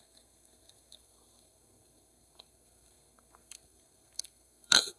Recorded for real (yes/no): no